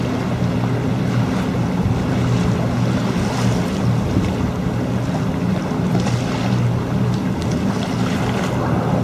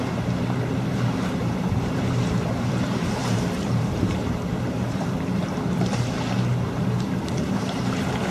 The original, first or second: first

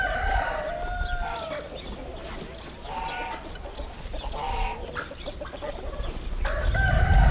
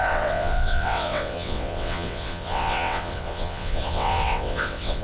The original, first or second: first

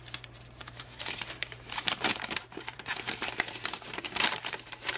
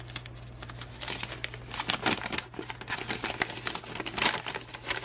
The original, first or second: second